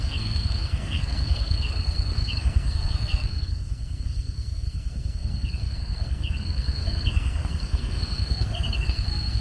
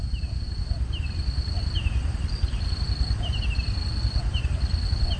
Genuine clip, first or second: second